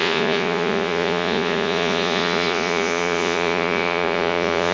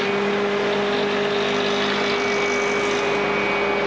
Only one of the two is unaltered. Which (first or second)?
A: second